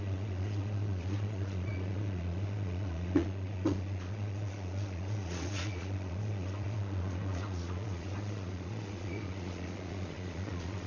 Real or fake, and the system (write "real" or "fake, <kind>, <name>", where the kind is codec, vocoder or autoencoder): fake, vocoder, Vocos